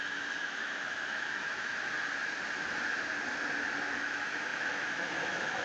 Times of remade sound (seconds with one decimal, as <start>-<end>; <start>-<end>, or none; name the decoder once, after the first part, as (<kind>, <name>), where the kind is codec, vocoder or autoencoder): 0.0-1.7 (autoencoder, DAC-VAE); 3.8-5.6